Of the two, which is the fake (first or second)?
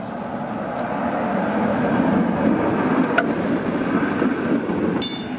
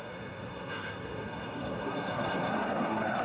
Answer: second